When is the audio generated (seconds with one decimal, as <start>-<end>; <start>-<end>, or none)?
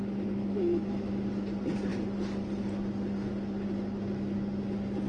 0.4-1.1